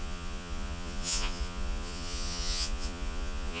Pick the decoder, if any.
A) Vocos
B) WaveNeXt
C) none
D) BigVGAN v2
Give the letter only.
A